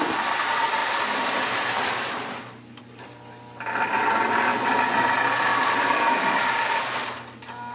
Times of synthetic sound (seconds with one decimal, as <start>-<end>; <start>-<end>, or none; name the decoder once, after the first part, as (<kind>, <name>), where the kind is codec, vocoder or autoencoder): 5.5-6.8 (vocoder, BigVGAN v2)